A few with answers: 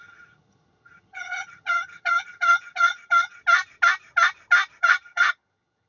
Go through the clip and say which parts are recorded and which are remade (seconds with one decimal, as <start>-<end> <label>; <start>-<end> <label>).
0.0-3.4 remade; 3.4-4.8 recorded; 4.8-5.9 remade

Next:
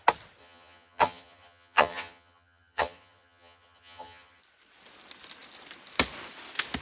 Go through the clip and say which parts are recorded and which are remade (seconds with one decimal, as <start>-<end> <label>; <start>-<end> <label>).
0.0-0.4 recorded; 0.4-4.4 remade; 4.4-6.8 recorded

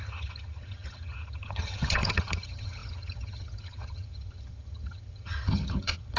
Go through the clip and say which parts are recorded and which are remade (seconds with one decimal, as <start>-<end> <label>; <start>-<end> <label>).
0.0-6.2 remade

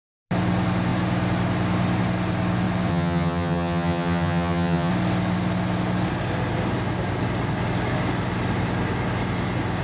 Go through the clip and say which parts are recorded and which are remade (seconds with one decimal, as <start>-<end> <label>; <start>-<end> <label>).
0.0-2.9 recorded; 2.9-4.9 remade; 4.9-9.8 recorded

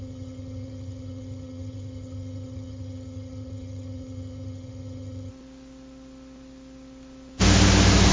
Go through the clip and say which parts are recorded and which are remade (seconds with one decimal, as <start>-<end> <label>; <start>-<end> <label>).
0.0-5.3 remade; 5.3-8.1 recorded

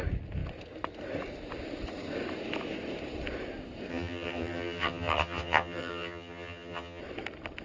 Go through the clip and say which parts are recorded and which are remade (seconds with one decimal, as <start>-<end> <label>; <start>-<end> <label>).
0.0-3.9 recorded; 3.9-7.0 remade; 7.0-7.6 recorded

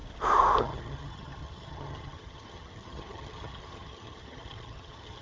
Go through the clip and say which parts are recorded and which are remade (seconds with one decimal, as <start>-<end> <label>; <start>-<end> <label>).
0.0-0.6 recorded; 0.6-5.2 remade

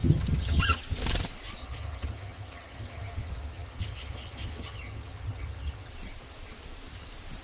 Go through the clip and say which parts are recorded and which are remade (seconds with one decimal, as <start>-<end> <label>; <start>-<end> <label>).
0.0-0.8 remade; 0.8-1.6 recorded; 1.6-5.9 remade; 5.9-7.4 recorded